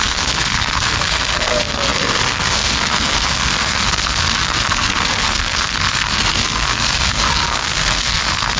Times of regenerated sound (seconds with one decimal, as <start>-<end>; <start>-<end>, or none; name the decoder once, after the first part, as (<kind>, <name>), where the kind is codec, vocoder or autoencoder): 0.0-8.6 (codec, SNAC)